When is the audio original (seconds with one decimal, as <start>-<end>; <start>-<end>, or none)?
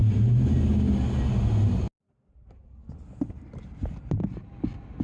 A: 0.0-5.0